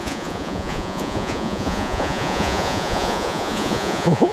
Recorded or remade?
remade